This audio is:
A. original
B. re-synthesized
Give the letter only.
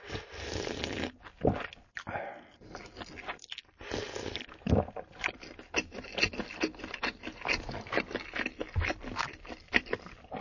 A